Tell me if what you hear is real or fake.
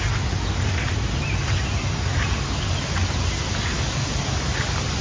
real